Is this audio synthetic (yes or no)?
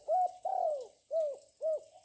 no